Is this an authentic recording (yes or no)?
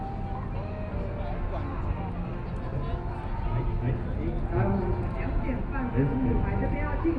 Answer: yes